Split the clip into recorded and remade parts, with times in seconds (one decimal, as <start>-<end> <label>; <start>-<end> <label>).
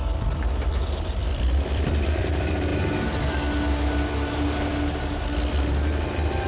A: 0.0-0.7 recorded; 0.7-2.7 remade; 2.7-6.5 recorded